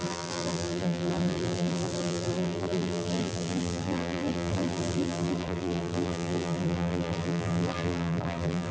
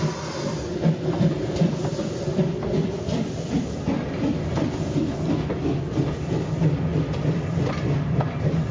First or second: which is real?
second